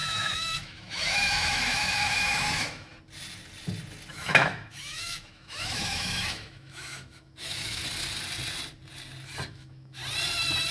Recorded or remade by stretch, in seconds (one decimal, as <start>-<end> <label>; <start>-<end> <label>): 0.0-2.9 remade; 2.9-4.1 recorded; 4.1-7.8 remade; 7.8-9.5 recorded; 9.5-10.0 remade; 10.0-10.7 recorded